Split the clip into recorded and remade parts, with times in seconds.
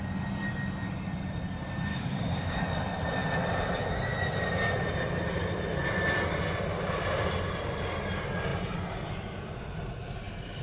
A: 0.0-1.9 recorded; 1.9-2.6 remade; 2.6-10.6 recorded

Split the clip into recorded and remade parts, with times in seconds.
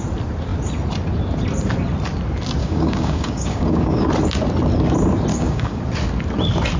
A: 0.0-2.6 recorded; 2.6-4.1 remade; 4.1-5.3 recorded; 5.3-5.8 remade; 5.8-6.8 recorded